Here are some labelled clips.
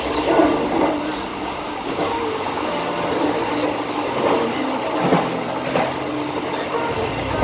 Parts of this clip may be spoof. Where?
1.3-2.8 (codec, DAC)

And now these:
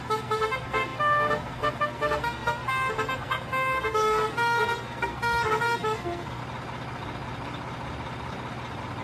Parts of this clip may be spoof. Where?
0.0-6.4 (codec, SNAC)

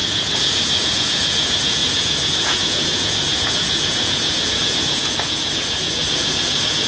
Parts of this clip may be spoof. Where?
0.0-6.9 (vocoder, Vocos)

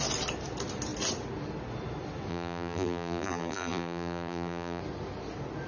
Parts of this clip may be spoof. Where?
2.3-4.8 (vocoder, BigVGAN v2)

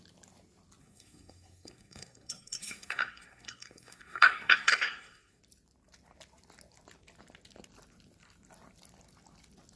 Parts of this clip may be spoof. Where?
0.8-5.4 (codec, SNAC)

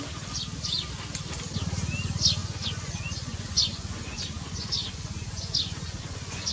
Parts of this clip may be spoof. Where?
2.4-6.5 (vocoder, Vocos)